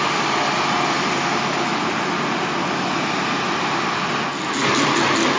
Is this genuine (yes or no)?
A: yes